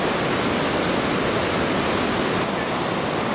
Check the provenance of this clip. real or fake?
real